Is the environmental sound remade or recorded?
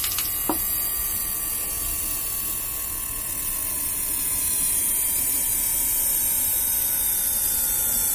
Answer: recorded